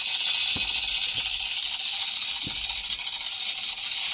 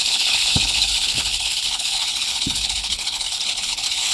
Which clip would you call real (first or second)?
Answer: first